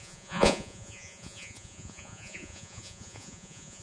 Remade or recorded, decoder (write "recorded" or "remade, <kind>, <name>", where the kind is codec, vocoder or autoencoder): remade, vocoder, Vocos